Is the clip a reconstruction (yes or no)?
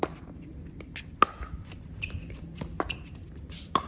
yes